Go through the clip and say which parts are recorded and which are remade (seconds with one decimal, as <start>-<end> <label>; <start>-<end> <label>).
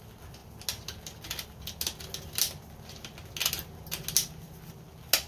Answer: 0.0-5.3 recorded